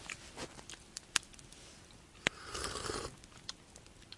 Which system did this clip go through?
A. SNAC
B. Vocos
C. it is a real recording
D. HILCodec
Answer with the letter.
C